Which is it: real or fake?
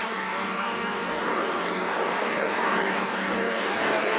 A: fake